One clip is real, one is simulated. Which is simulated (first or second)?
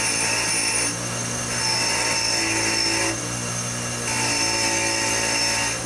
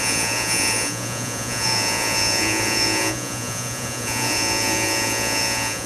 second